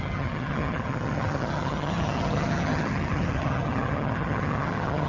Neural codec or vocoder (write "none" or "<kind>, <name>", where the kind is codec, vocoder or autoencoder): vocoder, HiFi-GAN